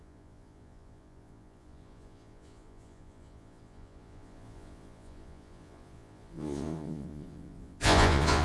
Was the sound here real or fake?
fake